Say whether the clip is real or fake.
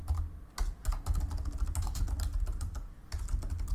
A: real